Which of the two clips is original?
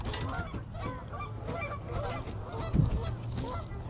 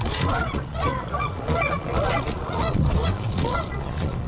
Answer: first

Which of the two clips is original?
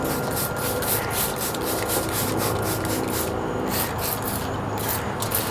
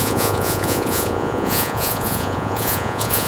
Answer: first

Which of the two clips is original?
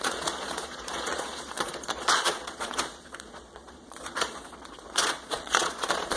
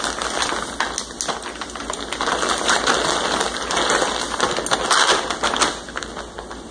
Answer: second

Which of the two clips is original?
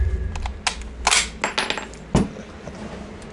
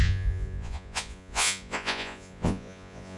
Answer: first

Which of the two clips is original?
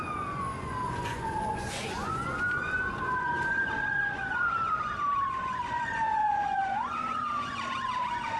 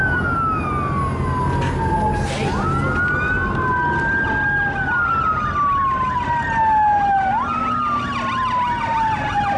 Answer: second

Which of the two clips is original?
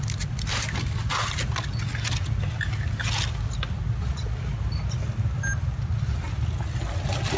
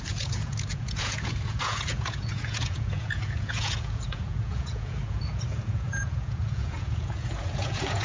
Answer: first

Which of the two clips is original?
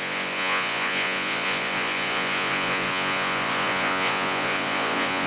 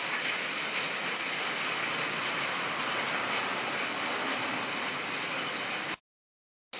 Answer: second